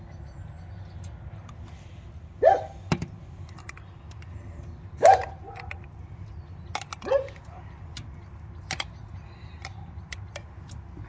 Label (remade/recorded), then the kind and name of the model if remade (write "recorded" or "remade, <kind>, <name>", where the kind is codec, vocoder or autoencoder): recorded